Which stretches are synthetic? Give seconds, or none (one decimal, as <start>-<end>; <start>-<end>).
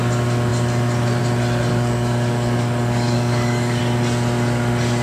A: 1.7-3.8